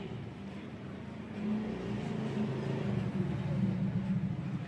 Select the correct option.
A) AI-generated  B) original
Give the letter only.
B